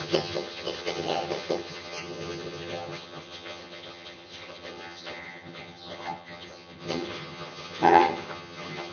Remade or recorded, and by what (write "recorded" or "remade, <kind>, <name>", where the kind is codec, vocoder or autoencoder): remade, vocoder, HiFi-GAN